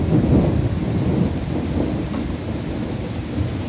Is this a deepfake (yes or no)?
no